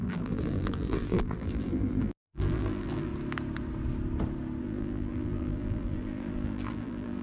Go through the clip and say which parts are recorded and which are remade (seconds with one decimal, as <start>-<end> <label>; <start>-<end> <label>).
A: 0.0-3.1 remade; 3.1-4.6 recorded; 4.6-7.2 remade